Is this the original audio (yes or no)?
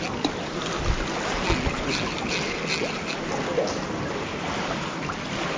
yes